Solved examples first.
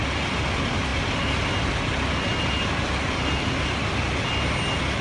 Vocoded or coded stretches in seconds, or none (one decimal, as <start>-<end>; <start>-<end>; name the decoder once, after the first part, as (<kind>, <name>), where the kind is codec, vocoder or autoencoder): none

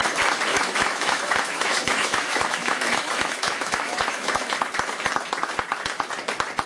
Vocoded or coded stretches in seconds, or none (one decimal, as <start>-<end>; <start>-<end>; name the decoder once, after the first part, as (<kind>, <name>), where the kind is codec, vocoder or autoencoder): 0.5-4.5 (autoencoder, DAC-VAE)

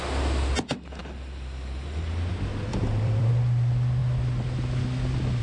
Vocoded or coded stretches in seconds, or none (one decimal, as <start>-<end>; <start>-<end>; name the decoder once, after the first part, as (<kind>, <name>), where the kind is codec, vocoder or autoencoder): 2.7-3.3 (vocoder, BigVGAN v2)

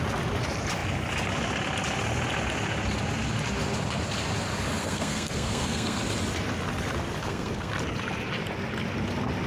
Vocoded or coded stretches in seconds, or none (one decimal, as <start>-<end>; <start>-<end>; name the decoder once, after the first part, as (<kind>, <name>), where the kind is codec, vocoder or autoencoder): 4.8-6.0 (codec, SNAC); 7.2-7.7

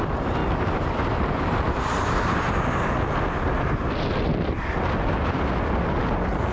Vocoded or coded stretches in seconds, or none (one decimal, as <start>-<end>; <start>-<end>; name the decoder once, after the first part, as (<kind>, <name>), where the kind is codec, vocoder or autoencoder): 0.4-1.7 (vocoder, BigVGAN v2)

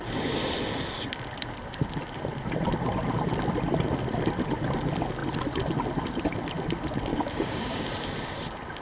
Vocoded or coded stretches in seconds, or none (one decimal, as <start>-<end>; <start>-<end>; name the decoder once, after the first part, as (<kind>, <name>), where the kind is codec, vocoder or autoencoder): 7.1-7.9 (codec, DAC)